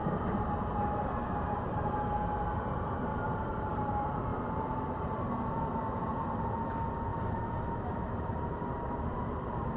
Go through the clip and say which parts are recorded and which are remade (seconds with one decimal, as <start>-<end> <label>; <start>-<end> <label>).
0.0-0.5 remade; 0.5-3.1 recorded; 3.1-3.7 remade; 3.7-4.3 recorded; 4.3-5.6 remade; 5.6-7.1 recorded; 7.1-9.8 remade